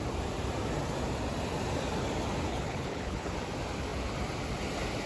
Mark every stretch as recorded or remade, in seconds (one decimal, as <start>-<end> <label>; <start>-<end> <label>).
0.0-2.5 recorded; 2.5-3.3 remade; 3.3-5.1 recorded